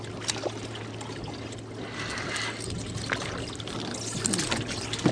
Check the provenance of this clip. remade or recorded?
recorded